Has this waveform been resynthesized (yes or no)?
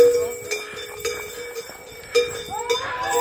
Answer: no